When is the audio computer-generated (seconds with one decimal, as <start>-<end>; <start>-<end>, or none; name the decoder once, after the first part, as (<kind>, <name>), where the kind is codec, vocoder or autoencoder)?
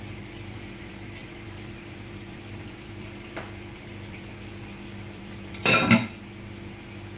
0.0-5.6 (vocoder, BigVGAN v2)